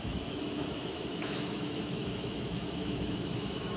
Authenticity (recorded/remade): remade